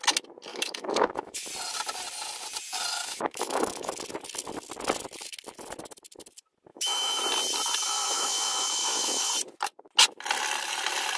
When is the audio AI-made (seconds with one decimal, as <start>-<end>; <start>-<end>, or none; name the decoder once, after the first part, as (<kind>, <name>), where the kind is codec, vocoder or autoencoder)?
0.5-1.5 (autoencoder, DAC-VAE); 2.9-3.9; 6.7-7.2; 7.8-9.3